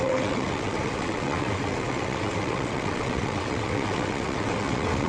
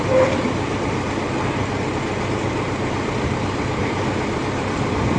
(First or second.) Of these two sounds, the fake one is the first